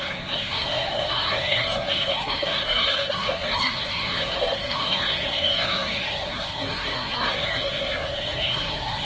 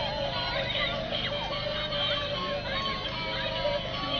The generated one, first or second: first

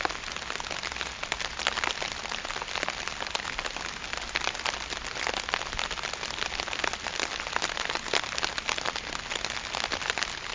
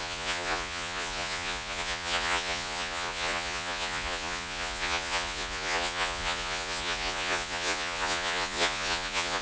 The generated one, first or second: second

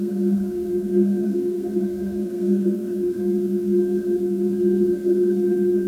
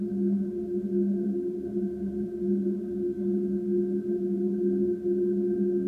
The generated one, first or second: first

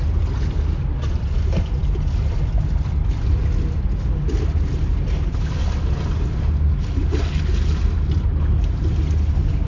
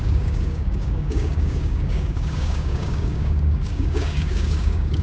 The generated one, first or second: second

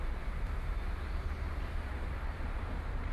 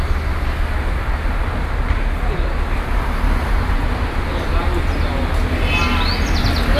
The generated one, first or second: first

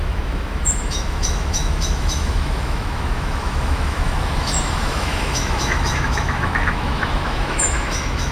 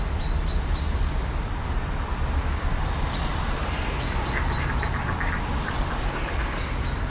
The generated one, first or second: first